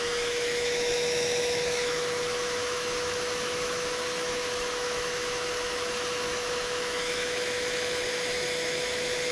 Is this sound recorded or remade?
remade